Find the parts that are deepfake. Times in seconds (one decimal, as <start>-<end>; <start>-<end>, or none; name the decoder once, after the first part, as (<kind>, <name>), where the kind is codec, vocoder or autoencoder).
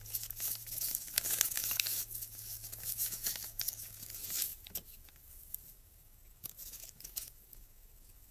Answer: 0.0-8.3 (codec, DAC)